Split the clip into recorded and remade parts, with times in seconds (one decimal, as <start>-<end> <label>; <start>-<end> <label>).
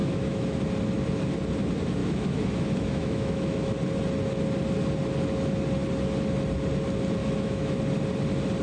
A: 0.0-0.6 remade; 0.6-2.0 recorded; 2.0-3.7 remade; 3.7-7.2 recorded; 7.2-7.8 remade; 7.8-8.6 recorded